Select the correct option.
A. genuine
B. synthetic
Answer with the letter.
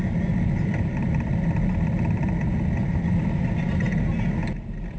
A